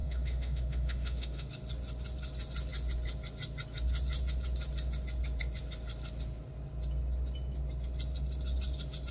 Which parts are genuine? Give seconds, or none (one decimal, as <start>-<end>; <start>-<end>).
1.5-9.1